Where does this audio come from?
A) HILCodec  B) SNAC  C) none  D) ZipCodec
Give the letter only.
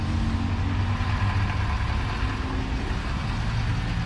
C